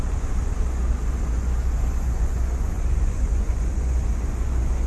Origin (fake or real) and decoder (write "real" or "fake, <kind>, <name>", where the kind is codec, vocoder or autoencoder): fake, vocoder, Vocos